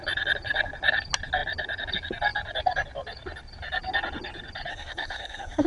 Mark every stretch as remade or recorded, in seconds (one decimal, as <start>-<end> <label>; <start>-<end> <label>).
0.0-4.7 recorded; 4.7-5.7 remade